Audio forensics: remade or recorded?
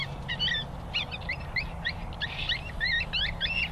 recorded